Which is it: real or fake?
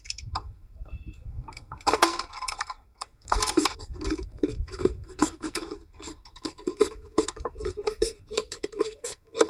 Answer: fake